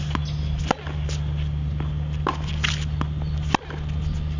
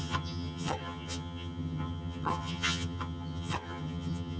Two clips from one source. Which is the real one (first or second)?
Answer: first